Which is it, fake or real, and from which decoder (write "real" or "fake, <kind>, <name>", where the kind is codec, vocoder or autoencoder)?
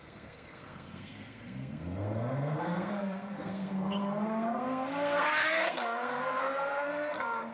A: fake, codec, SNAC